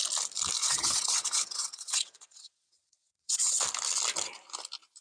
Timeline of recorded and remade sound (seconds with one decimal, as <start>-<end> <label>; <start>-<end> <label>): 0.0-0.6 recorded; 0.6-3.6 remade; 3.6-5.0 recorded